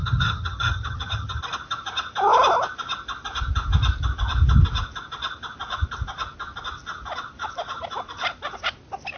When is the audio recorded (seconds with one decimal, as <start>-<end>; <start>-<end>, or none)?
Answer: 1.4-9.2

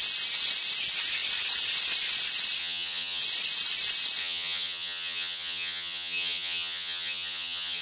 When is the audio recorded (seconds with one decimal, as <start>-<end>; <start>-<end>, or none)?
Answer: 0.0-2.6; 3.2-4.2